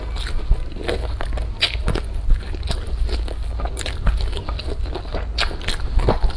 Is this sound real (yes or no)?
yes